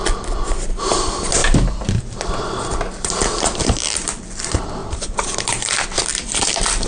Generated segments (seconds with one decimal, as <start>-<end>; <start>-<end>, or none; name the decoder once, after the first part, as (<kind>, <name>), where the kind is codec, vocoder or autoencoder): 0.0-1.4 (vocoder, BigVGAN v2); 2.0-6.9